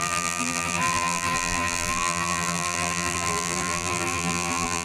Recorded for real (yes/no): no